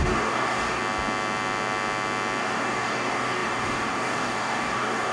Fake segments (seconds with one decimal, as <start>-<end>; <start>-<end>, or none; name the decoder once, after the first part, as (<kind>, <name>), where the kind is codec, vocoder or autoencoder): 0.0-0.8 (codec, DAC); 2.4-5.1